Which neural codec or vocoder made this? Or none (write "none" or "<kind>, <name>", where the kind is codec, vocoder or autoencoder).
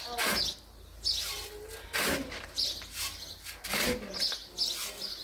none